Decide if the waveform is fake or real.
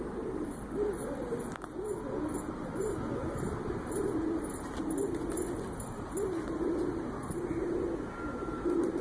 real